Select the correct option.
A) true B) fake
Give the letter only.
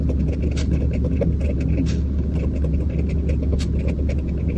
A